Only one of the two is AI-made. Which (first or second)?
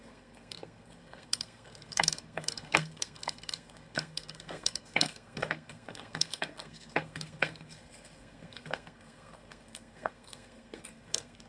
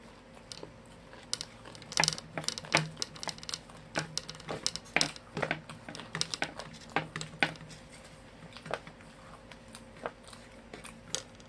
first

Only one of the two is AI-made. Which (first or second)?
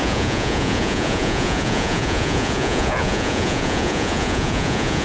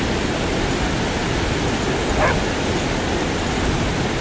first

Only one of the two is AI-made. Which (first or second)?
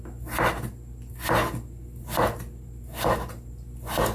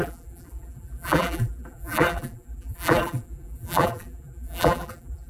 second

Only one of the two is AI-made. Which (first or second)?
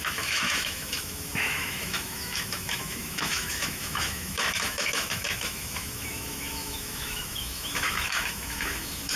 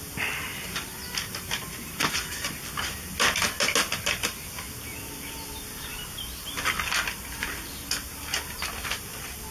first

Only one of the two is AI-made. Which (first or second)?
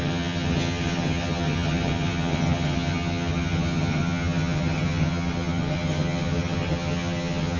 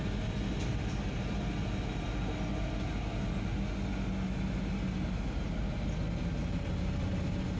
first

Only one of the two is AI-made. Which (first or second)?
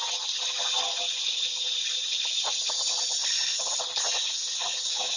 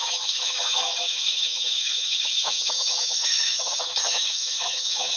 second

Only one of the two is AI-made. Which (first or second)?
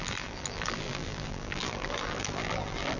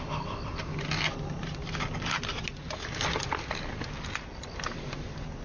first